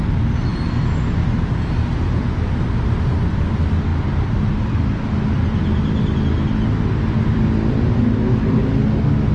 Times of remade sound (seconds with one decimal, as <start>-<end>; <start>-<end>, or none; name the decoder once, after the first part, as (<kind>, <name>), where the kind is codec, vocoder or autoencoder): none